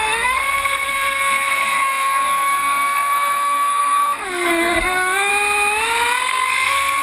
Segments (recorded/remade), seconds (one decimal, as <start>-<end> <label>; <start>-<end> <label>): 0.0-5.3 remade; 5.3-6.2 recorded; 6.2-7.0 remade